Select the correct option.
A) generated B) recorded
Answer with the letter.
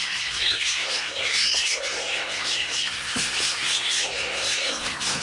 A